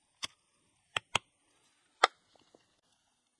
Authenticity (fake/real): real